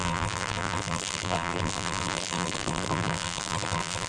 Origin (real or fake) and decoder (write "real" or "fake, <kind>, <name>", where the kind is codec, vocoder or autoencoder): fake, vocoder, BigVGAN v2